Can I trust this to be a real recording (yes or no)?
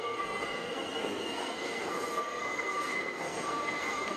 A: no